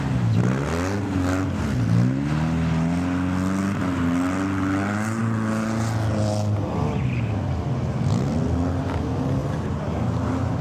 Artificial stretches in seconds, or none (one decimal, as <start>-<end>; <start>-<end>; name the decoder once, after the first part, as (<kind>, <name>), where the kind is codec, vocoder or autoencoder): 9.4-10.6 (vocoder, BigVGAN v2)